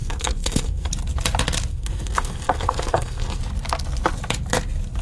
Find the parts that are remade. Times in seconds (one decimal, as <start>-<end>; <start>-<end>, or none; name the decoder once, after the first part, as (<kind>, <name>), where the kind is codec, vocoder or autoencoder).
0.0-0.9 (codec, SNAC); 1.7-3.4